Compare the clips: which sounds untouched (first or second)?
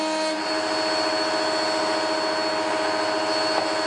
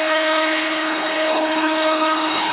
first